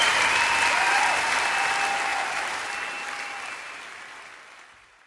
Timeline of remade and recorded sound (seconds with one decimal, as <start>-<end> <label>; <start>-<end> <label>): 0.0-2.1 recorded; 2.1-5.1 remade